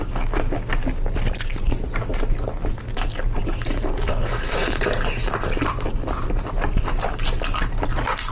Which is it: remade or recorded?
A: recorded